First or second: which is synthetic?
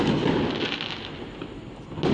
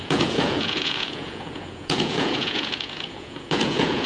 second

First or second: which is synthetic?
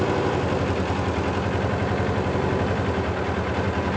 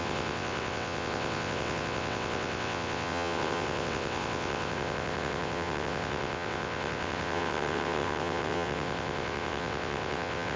second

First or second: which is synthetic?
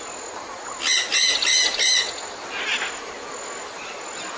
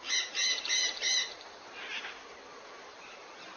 second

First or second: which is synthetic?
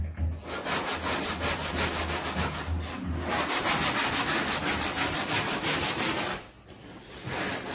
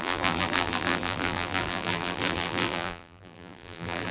second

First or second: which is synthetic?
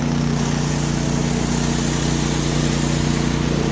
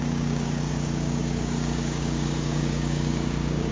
second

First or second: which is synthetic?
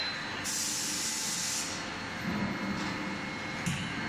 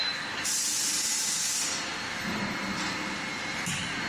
second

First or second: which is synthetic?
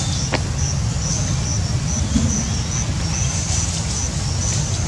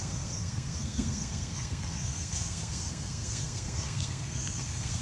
second